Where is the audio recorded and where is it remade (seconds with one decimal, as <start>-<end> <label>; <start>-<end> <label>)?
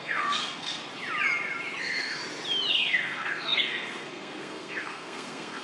0.0-0.8 remade; 0.8-1.8 recorded; 1.8-2.2 remade; 2.2-2.7 recorded; 2.7-5.6 remade